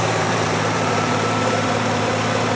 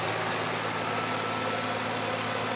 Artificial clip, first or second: first